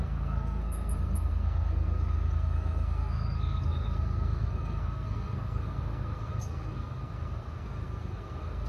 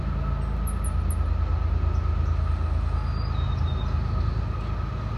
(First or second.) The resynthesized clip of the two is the first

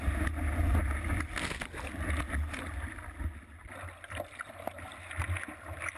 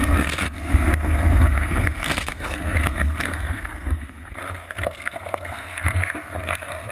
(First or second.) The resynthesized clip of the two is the second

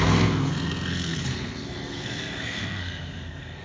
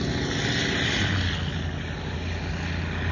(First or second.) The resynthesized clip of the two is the first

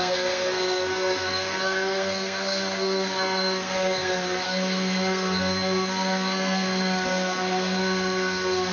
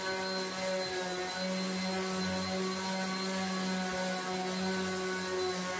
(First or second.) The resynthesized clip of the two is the first